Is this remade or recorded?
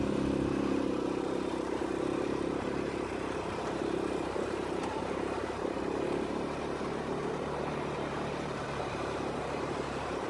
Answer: remade